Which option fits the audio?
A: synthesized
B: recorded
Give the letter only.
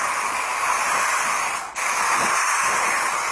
B